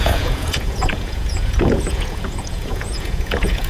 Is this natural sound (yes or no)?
no